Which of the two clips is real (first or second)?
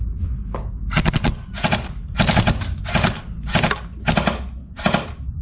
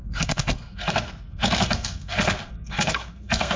first